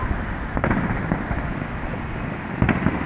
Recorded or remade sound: recorded